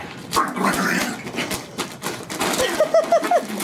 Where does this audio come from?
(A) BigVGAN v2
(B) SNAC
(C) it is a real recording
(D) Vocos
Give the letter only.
C